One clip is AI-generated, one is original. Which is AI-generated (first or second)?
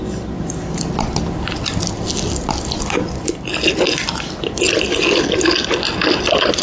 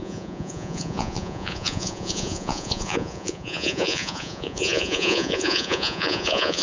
second